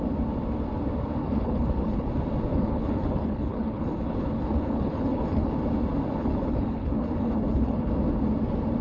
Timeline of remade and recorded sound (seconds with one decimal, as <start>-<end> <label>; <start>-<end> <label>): 0.0-1.2 recorded; 1.2-2.1 remade; 2.1-2.5 recorded; 2.5-5.5 remade; 5.5-6.2 recorded; 6.2-7.9 remade; 7.9-8.8 recorded